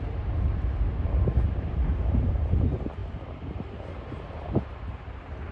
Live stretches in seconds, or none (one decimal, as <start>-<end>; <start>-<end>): 3.0-4.7